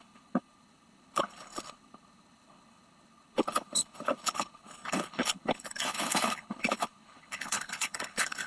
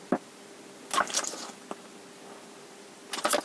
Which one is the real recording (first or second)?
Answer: second